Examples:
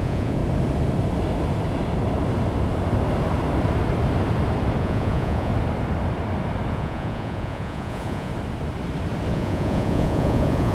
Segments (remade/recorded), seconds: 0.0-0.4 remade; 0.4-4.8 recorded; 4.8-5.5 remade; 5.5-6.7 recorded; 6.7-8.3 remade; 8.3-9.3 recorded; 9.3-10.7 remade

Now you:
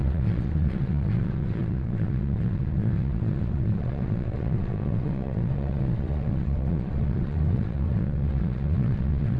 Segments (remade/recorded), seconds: 0.0-9.4 remade

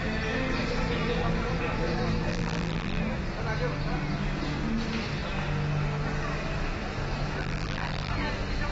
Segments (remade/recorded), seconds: 0.0-2.3 recorded; 2.3-3.0 remade; 3.0-7.4 recorded; 7.4-8.1 remade; 8.1-8.7 recorded

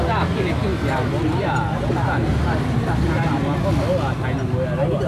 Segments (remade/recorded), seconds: 0.0-5.1 recorded